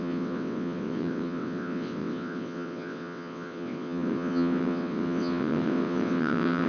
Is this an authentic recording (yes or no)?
no